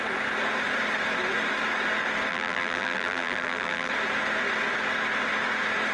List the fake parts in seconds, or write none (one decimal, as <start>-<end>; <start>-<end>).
2.3-3.9